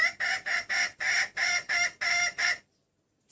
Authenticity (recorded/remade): recorded